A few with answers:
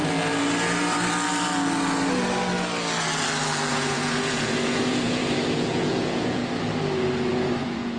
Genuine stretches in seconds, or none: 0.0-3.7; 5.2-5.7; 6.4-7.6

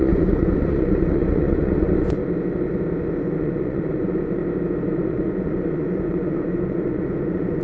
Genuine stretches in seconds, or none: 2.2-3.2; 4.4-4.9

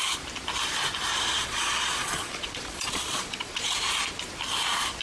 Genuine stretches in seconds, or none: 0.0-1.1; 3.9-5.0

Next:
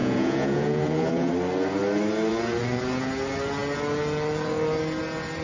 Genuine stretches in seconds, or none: 1.3-5.4